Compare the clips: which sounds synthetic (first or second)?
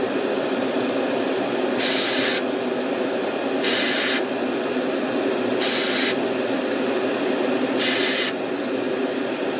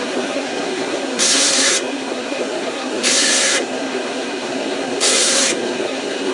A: second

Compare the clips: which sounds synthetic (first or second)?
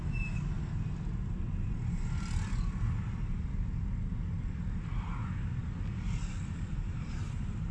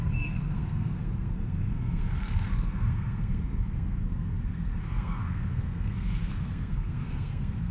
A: second